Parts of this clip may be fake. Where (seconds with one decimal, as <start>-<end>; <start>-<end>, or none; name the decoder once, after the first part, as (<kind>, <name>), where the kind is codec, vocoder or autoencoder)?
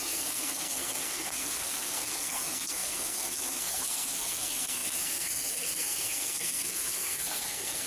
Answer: 0.0-7.9 (codec, SNAC)